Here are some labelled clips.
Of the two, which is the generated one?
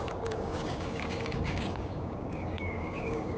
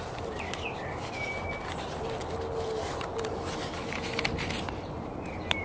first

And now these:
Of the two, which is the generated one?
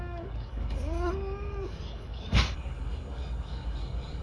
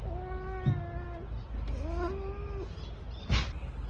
first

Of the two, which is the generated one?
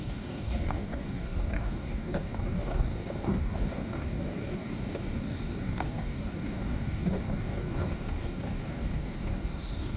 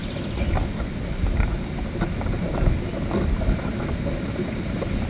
first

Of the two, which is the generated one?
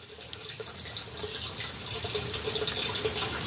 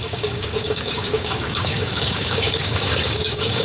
second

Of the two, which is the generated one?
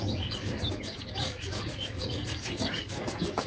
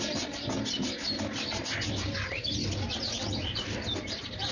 first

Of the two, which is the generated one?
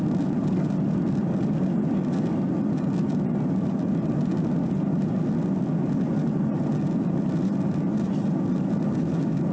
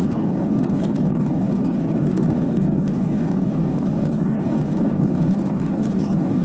second